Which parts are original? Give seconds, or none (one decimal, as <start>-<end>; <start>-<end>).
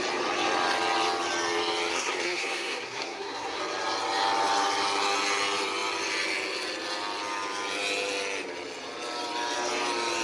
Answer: 0.0-1.9; 3.6-10.2